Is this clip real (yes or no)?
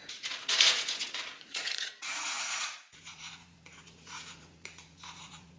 no